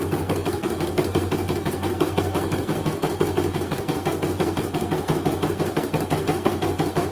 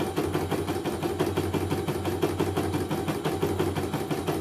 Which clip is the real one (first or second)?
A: second